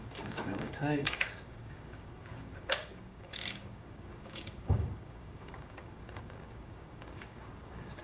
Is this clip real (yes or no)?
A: no